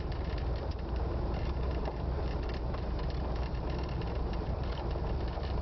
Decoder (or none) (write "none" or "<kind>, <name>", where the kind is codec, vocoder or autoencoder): vocoder, BigVGAN v2